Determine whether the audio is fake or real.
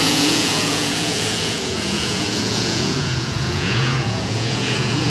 fake